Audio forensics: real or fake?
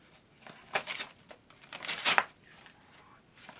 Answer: real